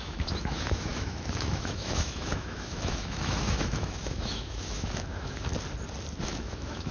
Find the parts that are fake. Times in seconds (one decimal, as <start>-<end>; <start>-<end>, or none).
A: 0.0-5.5; 6.2-6.9